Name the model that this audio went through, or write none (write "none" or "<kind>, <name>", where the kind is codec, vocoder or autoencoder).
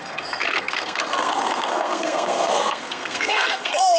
codec, SNAC